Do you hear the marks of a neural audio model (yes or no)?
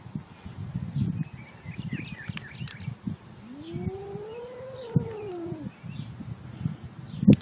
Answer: no